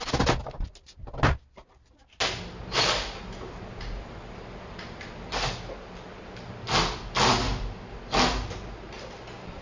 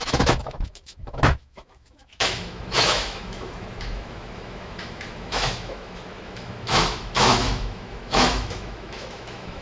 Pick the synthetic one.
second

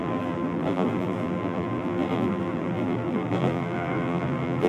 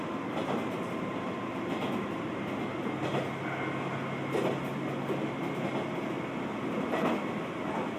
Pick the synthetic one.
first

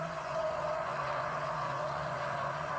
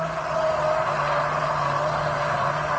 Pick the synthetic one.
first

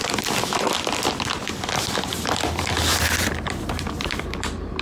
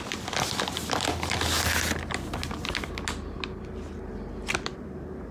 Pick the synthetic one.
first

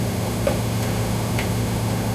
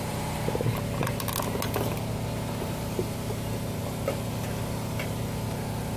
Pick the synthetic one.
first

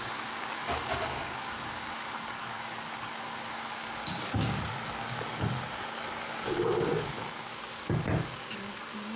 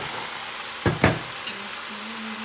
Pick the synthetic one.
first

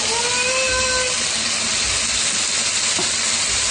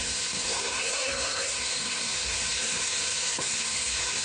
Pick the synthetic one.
second